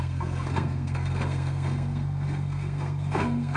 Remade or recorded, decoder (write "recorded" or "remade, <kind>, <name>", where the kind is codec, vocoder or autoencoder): remade, codec, SNAC